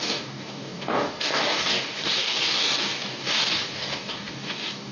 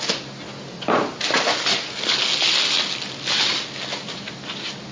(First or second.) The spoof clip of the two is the first